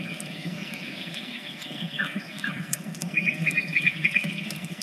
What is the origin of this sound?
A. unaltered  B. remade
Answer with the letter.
B